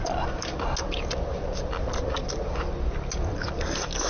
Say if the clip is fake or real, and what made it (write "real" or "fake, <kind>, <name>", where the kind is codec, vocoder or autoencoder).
real